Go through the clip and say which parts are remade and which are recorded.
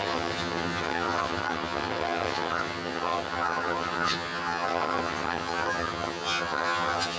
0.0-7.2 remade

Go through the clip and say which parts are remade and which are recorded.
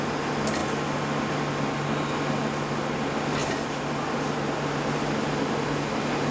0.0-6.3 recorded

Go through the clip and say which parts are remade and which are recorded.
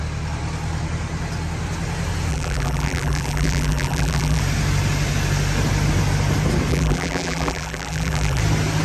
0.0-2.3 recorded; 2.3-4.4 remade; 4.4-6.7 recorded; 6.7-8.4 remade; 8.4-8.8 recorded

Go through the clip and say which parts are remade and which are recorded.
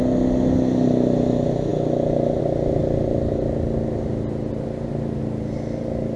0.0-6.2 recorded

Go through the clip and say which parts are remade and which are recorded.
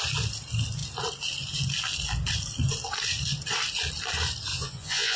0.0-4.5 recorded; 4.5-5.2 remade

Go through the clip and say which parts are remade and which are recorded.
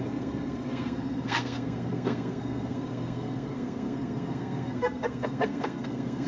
0.0-6.3 remade